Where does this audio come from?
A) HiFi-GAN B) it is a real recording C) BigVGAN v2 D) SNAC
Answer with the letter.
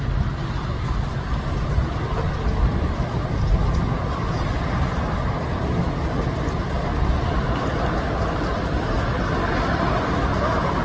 B